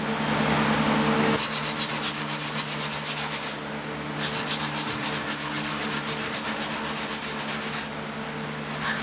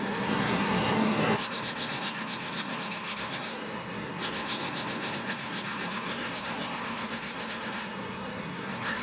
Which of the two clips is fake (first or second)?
second